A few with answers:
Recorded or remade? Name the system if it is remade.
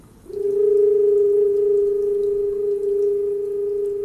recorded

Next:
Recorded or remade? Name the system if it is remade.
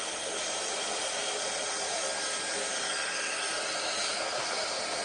recorded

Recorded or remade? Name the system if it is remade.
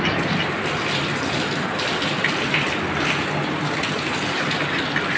recorded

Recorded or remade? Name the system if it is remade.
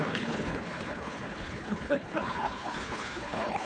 remade, codec, HILCodec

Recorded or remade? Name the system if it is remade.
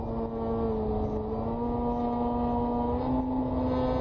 recorded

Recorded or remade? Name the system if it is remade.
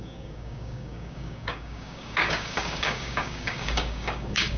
remade, codec, DAC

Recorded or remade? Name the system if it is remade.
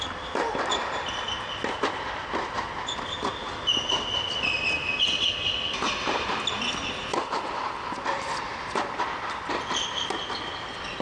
recorded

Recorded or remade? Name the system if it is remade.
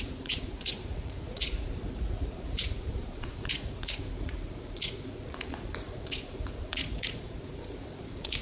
remade, vocoder, Vocos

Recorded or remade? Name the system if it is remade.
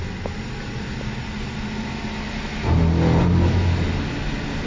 recorded